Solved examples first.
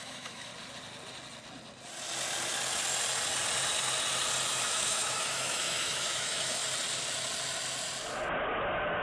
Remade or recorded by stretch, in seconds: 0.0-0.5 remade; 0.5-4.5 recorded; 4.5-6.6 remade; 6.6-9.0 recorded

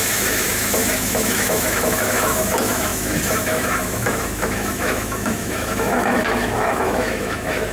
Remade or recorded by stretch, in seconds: 0.0-7.7 remade

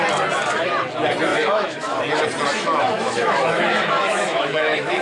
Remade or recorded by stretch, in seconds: 0.0-1.3 recorded; 1.3-2.0 remade; 2.0-2.5 recorded; 2.5-5.0 remade

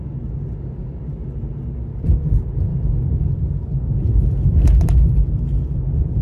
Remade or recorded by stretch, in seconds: 0.0-6.2 recorded

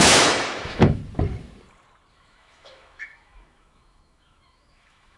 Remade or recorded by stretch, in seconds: 0.0-1.0 remade; 1.0-2.1 recorded; 2.1-5.2 remade

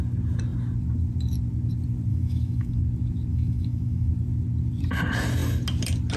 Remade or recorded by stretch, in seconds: 0.0-2.1 recorded; 2.1-2.8 remade; 2.8-3.3 recorded; 3.3-4.1 remade; 4.1-6.2 recorded